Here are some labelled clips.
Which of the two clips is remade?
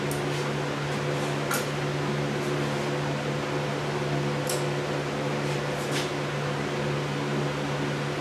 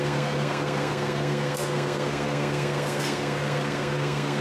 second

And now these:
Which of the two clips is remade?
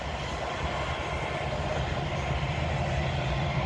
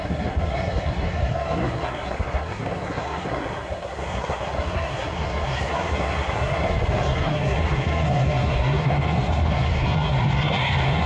second